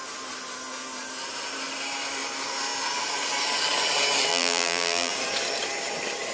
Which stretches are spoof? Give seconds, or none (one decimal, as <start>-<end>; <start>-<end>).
4.3-5.1